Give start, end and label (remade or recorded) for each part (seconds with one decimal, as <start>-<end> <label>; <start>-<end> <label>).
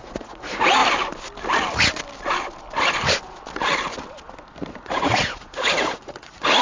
0.0-0.8 remade; 0.8-4.8 recorded; 4.8-6.6 remade